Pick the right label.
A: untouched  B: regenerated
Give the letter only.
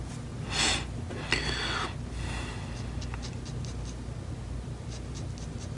A